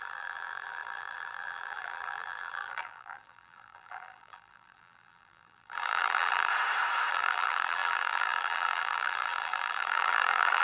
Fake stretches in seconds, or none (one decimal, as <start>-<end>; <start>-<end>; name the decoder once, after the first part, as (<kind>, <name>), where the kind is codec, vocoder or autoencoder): 0.0-6.5 (vocoder, BigVGAN v2); 7.1-10.6